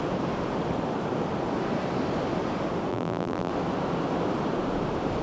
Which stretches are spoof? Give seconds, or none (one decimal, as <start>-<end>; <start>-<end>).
2.9-3.5